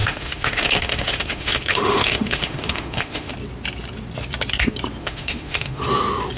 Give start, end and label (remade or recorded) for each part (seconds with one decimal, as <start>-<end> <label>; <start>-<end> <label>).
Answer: 0.0-3.3 remade; 3.3-5.0 recorded; 5.0-5.8 remade; 5.8-6.4 recorded